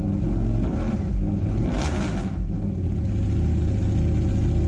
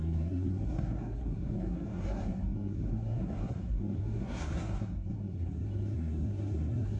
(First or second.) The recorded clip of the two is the first